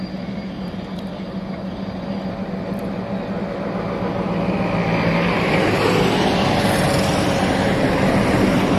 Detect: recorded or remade recorded